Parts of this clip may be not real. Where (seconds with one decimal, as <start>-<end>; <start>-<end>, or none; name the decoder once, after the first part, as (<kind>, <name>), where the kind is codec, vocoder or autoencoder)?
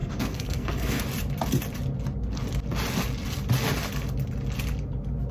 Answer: 0.0-1.0 (codec, SNAC)